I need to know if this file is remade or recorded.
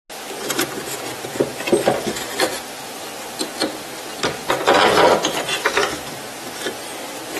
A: recorded